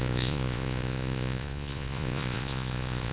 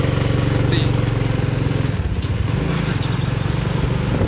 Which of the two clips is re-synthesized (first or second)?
first